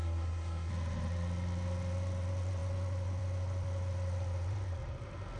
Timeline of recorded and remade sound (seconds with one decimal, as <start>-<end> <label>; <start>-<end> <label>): 0.0-0.7 remade; 0.7-5.4 recorded